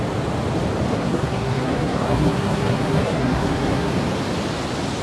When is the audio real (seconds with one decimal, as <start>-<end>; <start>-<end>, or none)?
0.0-0.9; 3.9-5.0